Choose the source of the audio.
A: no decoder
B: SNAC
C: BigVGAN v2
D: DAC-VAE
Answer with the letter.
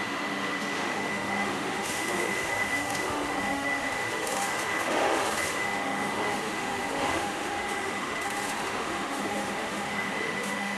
D